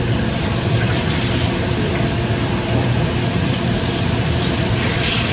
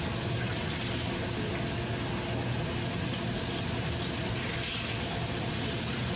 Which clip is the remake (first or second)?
first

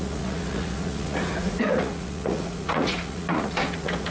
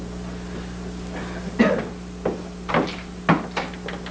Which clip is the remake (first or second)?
first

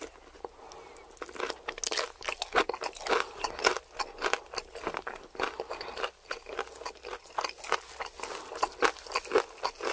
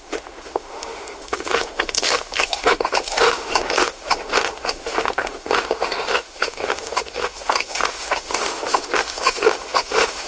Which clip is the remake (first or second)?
second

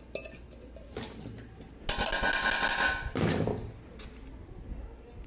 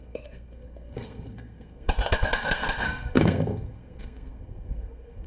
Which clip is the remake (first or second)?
second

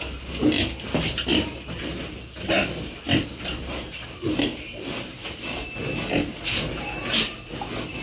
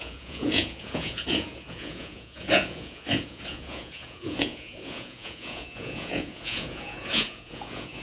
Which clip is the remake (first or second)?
second